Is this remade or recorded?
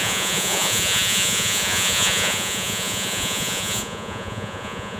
remade